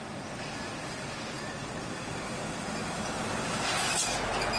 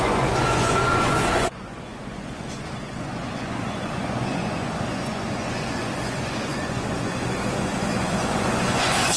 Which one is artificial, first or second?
second